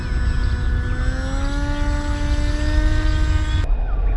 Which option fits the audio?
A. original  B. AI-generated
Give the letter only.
A